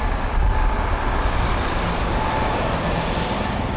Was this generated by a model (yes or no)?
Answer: no